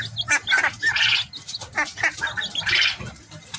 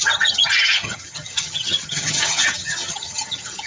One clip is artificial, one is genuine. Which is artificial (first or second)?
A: second